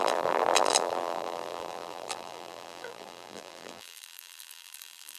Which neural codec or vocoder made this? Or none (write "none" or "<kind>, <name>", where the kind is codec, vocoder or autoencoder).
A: vocoder, BigVGAN v2